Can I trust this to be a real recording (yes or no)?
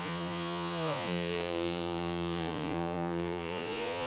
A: no